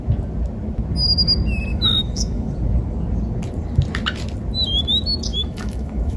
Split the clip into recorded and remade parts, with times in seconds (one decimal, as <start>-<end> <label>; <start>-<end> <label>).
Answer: 0.0-1.7 recorded; 1.7-2.5 remade; 2.5-5.3 recorded; 5.3-6.2 remade